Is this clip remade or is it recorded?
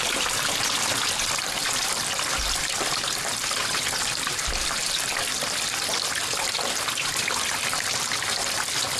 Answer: remade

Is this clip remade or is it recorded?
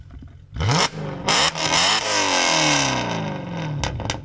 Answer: recorded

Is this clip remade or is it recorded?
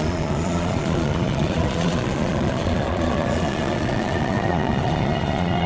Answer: remade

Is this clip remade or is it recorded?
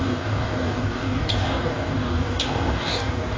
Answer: remade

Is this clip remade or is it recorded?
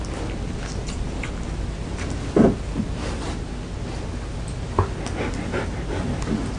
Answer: recorded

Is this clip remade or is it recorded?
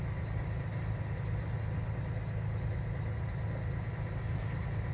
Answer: recorded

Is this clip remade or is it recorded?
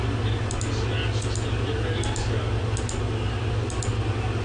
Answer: recorded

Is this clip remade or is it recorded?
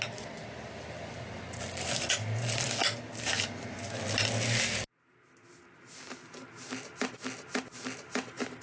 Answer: recorded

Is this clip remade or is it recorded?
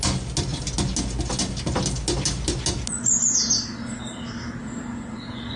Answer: recorded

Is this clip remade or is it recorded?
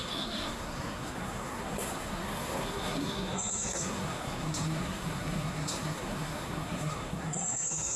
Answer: remade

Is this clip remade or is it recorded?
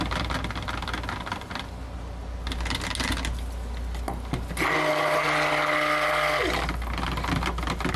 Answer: recorded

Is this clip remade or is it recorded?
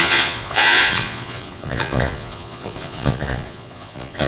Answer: remade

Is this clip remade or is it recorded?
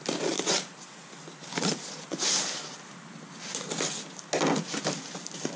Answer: recorded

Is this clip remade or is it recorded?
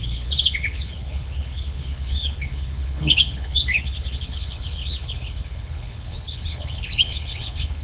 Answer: remade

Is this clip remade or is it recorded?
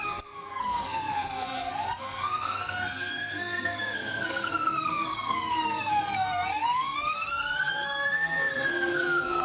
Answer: remade